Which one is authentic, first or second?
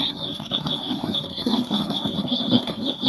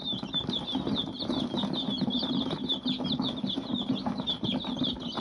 second